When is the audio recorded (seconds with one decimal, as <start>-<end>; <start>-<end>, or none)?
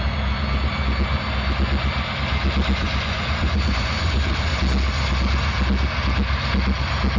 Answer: 0.0-2.8; 4.6-7.2